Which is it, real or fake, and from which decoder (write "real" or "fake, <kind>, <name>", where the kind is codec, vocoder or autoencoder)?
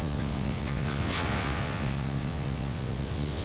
fake, vocoder, WaveNeXt